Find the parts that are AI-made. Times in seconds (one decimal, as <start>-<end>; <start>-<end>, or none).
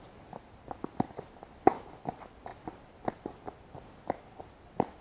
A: none